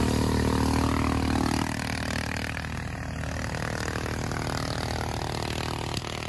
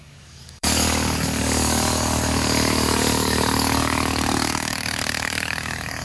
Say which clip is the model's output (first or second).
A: second